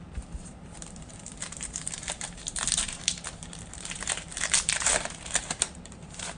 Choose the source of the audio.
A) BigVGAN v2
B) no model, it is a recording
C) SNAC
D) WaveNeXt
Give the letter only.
A